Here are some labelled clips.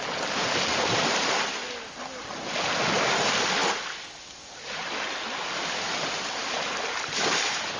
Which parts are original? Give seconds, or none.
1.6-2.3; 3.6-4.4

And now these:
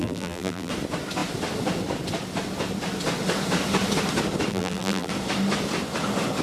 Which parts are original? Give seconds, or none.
0.7-4.5; 5.1-6.4

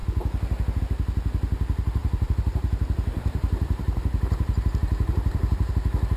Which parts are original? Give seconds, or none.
0.0-2.0; 5.7-6.2